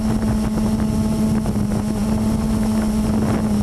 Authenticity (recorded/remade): recorded